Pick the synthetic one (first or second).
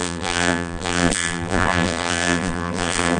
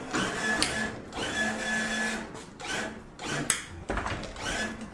first